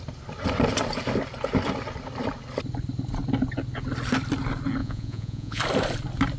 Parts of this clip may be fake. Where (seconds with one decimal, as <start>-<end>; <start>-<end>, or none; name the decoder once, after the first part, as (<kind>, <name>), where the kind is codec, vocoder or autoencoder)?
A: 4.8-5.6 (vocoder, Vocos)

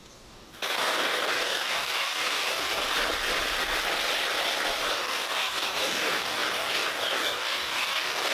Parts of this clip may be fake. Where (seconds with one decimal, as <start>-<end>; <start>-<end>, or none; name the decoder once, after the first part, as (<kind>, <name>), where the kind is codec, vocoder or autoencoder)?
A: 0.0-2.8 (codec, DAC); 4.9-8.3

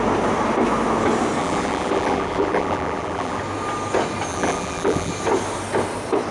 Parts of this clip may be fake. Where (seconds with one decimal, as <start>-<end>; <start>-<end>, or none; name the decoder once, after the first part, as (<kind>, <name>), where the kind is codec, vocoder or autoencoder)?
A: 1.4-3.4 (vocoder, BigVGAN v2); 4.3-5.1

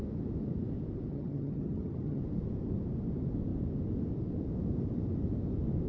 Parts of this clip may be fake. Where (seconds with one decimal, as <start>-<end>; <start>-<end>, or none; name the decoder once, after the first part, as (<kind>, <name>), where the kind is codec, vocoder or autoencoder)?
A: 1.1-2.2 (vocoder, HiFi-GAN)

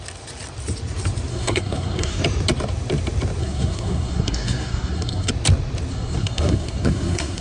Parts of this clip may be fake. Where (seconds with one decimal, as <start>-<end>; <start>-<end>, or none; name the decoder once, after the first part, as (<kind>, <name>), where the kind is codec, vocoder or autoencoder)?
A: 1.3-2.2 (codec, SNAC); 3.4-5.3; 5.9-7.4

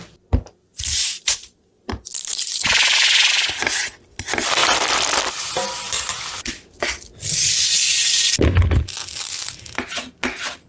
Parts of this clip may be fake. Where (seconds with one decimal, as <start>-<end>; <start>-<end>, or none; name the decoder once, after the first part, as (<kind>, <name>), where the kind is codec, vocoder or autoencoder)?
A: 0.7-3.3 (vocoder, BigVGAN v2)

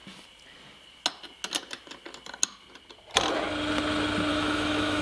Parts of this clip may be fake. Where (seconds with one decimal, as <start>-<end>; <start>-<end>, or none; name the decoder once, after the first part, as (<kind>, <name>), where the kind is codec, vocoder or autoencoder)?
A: 4.3-5.0 (autoencoder, DAC-VAE)